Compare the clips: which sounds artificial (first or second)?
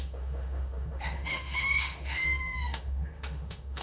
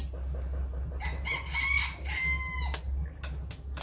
first